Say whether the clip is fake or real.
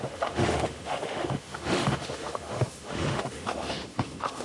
fake